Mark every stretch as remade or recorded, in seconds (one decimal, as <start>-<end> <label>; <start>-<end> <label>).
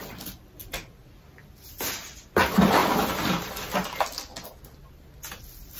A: 0.0-5.8 recorded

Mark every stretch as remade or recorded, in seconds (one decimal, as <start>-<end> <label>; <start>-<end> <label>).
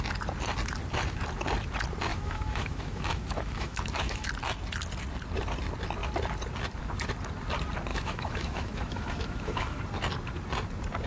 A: 0.0-2.1 recorded; 2.1-4.3 remade; 4.3-7.9 recorded; 7.9-9.8 remade; 9.8-11.1 recorded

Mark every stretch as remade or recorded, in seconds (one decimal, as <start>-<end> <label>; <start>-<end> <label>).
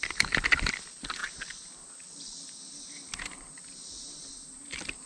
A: 0.0-5.1 recorded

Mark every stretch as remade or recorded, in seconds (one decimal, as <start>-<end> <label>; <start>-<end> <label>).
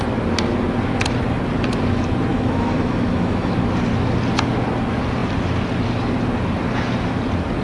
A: 0.0-2.3 recorded; 2.3-3.5 remade; 3.5-7.6 recorded